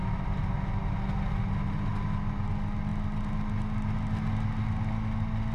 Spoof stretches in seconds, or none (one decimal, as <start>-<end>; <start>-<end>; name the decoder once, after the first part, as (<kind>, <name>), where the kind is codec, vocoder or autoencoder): none